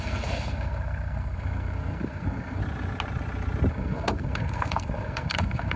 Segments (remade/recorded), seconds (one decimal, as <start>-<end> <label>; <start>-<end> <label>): 0.0-2.6 remade; 2.6-3.7 recorded; 3.7-5.8 remade